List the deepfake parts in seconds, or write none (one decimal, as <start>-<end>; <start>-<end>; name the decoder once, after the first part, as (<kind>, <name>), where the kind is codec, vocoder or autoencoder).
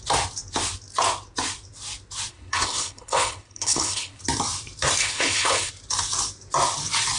2.3-4.2 (codec, HILCodec); 5.0-5.7